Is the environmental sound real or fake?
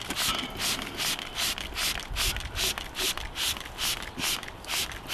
real